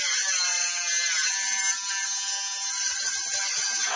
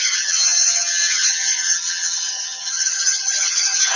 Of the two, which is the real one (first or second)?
first